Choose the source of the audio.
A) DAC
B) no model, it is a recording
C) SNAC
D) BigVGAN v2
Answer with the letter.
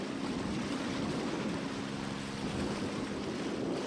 B